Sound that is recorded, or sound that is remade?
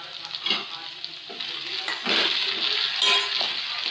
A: recorded